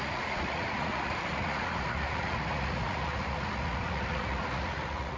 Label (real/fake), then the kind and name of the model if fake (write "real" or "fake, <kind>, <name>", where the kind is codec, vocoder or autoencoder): fake, vocoder, Vocos